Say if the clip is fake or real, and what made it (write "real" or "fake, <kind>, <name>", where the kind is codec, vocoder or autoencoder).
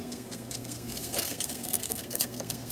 fake, codec, SNAC